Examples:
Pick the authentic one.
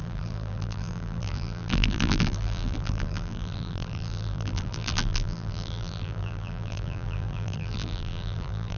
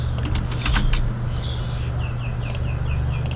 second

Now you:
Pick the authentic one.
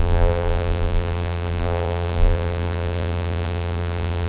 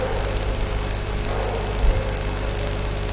second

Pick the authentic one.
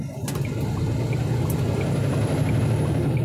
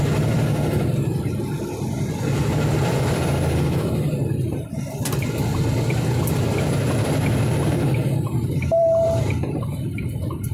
first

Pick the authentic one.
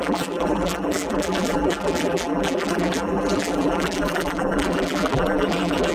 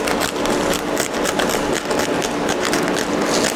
second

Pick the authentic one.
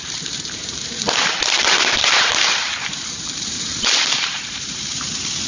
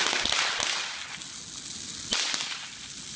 second